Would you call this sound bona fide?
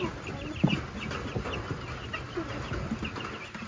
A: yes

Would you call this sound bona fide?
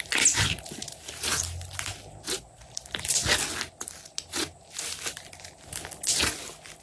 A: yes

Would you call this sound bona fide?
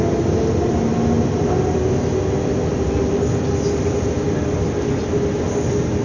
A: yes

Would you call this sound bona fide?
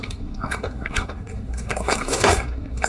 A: no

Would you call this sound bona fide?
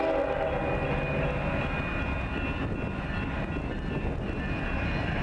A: yes